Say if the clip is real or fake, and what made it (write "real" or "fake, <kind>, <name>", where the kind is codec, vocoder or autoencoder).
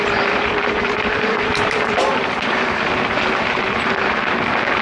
fake, vocoder, BigVGAN v2